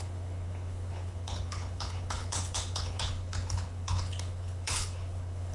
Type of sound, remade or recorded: remade